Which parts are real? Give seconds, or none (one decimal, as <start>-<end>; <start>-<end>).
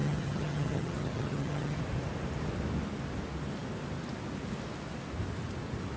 1.8-6.0